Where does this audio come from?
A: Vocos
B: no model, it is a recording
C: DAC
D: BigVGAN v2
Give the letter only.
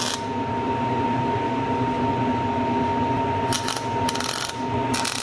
B